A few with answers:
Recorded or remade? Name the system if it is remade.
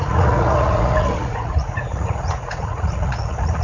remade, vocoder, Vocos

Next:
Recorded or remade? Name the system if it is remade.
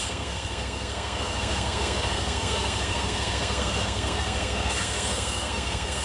remade, codec, SNAC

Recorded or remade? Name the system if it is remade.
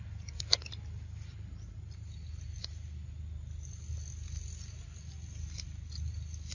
recorded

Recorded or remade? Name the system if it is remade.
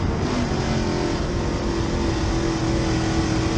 recorded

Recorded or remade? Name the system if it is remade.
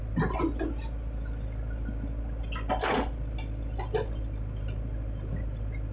recorded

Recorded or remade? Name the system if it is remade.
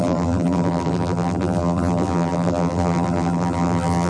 remade, vocoder, BigVGAN v2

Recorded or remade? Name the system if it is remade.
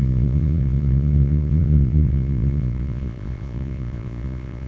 remade, vocoder, Vocos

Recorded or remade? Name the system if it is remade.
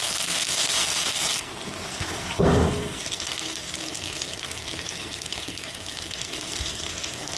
remade, codec, SNAC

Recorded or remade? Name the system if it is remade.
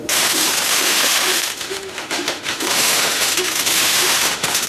remade, autoencoder, DAC-VAE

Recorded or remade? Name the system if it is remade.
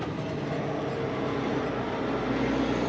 recorded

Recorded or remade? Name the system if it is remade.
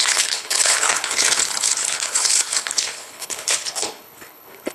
remade, codec, HILCodec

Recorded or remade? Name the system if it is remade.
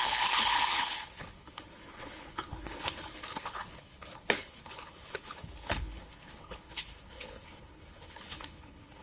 remade, codec, HILCodec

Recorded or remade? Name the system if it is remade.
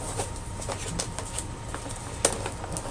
recorded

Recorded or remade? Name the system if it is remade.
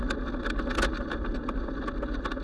recorded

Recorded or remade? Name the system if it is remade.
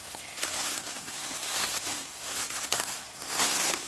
remade, codec, SNAC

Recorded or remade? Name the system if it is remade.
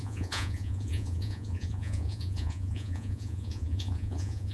remade, vocoder, Vocos